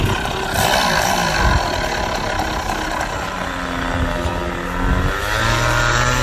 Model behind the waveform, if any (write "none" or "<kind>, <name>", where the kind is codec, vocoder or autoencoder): none